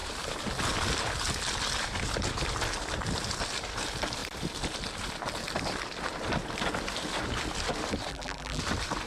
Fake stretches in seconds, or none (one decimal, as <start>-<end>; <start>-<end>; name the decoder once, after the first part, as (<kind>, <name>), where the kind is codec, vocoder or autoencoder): 8.1-8.6 (vocoder, BigVGAN v2)

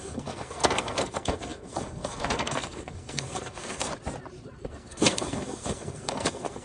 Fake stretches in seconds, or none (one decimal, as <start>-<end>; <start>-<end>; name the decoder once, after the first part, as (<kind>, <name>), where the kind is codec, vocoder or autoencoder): 0.0-3.9 (codec, SNAC); 4.6-6.6

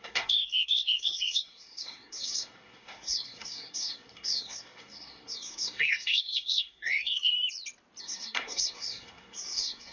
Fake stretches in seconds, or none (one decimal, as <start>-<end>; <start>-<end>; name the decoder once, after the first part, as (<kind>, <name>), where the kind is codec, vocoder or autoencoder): 0.0-7.3 (codec, SNAC); 8.0-9.9